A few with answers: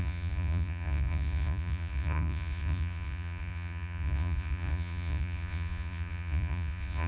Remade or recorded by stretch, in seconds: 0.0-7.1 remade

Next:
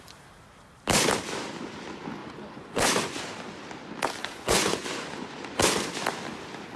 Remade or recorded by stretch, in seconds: 0.0-2.2 recorded; 2.2-3.2 remade; 3.2-4.2 recorded; 4.2-5.6 remade; 5.6-6.8 recorded

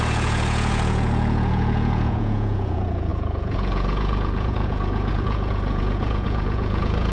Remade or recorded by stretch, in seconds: 0.0-7.1 remade

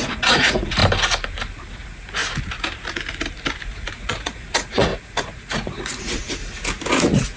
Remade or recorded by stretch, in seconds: 0.0-0.8 remade; 0.8-1.7 recorded; 1.7-2.2 remade; 2.2-3.6 recorded; 3.6-6.4 remade; 6.4-6.9 recorded; 6.9-7.4 remade

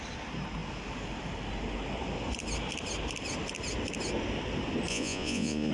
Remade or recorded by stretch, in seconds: 0.0-4.9 recorded; 4.9-5.7 remade

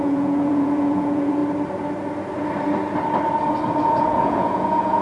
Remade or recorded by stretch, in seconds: 0.0-1.4 remade; 1.4-4.0 recorded; 4.0-5.0 remade

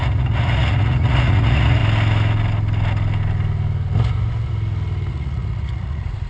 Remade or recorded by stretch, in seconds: 0.0-1.8 remade; 1.8-5.1 recorded; 5.1-6.3 remade